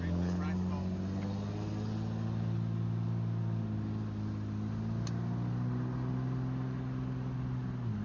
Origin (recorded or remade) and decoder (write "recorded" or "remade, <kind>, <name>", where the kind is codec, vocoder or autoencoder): recorded